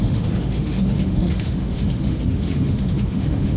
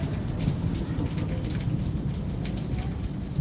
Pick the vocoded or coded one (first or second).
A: first